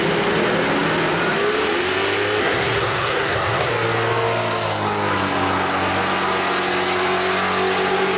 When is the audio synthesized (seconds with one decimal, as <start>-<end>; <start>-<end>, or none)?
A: 2.4-3.7